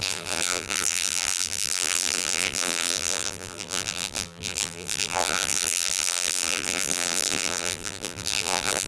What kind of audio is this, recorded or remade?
remade